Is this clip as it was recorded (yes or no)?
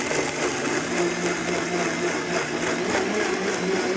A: yes